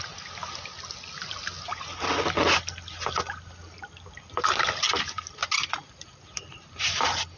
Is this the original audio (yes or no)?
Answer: yes